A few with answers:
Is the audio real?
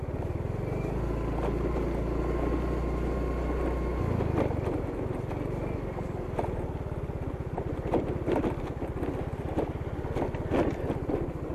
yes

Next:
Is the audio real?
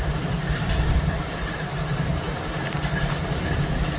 yes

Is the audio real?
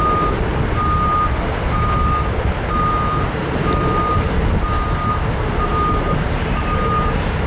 yes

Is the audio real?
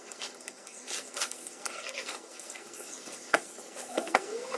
no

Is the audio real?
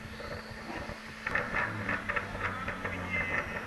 yes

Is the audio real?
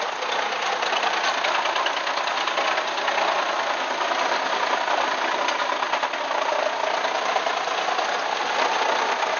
yes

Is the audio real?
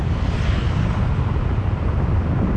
yes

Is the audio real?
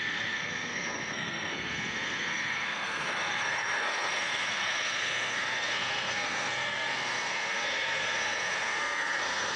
no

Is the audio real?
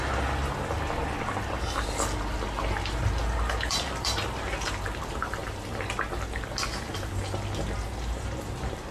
yes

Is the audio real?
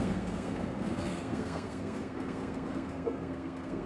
no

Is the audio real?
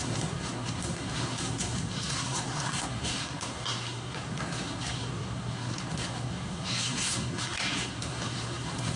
no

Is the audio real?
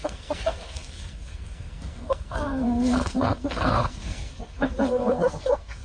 no